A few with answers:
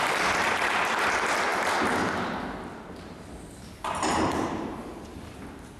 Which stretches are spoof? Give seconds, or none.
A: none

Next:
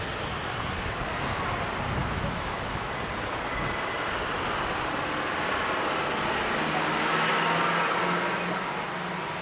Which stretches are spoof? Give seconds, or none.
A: 2.0-2.9 (autoencoder, DAC-VAE)

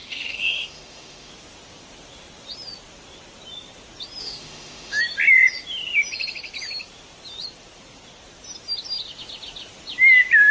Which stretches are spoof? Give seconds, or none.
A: 0.0-1.3 (autoencoder, DAC-VAE); 4.2-5.0

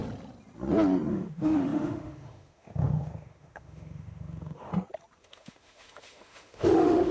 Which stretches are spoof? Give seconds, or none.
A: 1.1-4.7 (autoencoder, DAC-VAE); 5.2-7.1

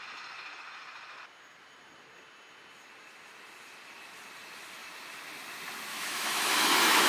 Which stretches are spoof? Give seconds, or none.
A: 5.9-7.1 (autoencoder, DAC-VAE)

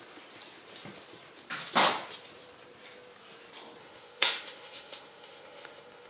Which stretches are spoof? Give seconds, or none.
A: 3.8-6.1 (autoencoder, DAC-VAE)

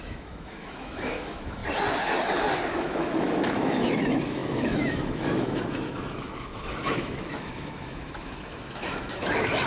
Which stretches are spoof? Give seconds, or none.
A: 0.0-1.6 (autoencoder, DAC-VAE); 2.7-9.7

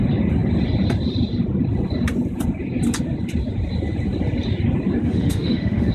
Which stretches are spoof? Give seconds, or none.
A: 5.0-5.9 (autoencoder, DAC-VAE)